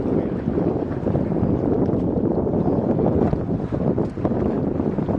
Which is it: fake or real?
real